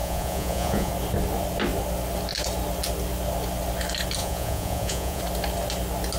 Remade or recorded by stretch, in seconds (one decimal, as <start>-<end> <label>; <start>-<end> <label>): 0.0-0.9 remade; 0.9-4.2 recorded; 4.2-5.2 remade; 5.2-6.2 recorded